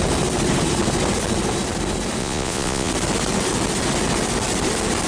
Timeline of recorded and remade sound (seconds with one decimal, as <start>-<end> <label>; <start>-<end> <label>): 0.0-2.2 recorded; 2.2-2.9 remade; 2.9-5.1 recorded